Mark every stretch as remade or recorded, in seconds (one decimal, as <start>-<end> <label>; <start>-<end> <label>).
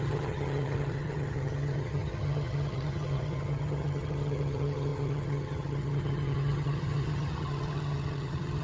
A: 0.0-8.6 remade